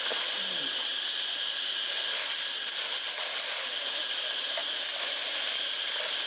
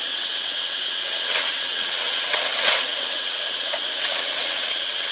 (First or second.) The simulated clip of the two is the second